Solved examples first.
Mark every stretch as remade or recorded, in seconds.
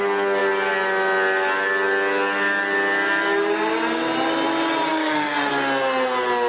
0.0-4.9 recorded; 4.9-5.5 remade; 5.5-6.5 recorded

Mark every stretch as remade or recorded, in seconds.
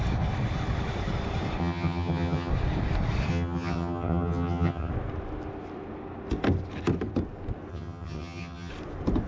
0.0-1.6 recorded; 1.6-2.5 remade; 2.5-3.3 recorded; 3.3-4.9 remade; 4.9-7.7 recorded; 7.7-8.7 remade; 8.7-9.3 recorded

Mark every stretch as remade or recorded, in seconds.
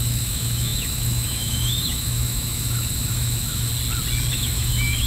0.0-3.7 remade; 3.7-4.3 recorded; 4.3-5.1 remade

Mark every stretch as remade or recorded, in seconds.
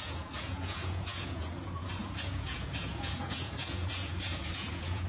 0.0-5.1 remade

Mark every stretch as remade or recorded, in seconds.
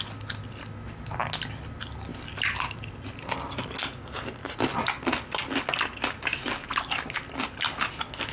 0.0-8.3 recorded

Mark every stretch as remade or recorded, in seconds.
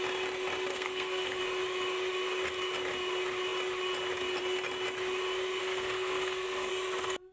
0.0-0.7 recorded; 0.7-1.4 remade; 1.4-5.6 recorded; 5.6-6.7 remade; 6.7-7.3 recorded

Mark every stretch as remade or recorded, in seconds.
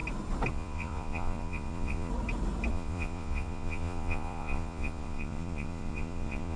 0.0-0.5 recorded; 0.5-2.1 remade; 2.1-2.7 recorded; 2.7-6.6 remade